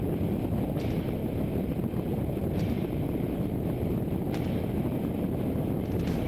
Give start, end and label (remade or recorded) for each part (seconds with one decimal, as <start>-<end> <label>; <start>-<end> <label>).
0.0-6.3 recorded